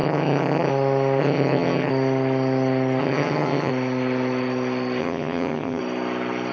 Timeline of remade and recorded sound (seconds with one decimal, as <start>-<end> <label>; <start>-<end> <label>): 0.0-0.7 remade; 0.7-1.2 recorded; 1.2-1.9 remade; 1.9-3.0 recorded; 3.0-3.7 remade; 3.7-5.0 recorded; 5.0-5.8 remade; 5.8-6.5 recorded